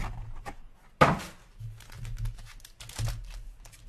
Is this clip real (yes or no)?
yes